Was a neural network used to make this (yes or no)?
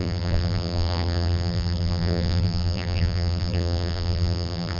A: yes